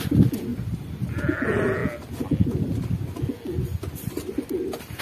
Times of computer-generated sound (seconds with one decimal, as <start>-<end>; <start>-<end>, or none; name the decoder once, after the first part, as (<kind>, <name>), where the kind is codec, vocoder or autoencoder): 0.5-1.1 (vocoder, BigVGAN v2)